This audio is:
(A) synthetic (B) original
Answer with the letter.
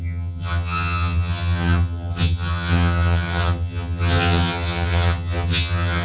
A